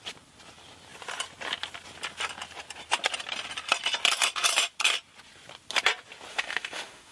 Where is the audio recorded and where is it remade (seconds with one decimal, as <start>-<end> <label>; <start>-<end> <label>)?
0.0-6.3 recorded; 6.3-7.1 remade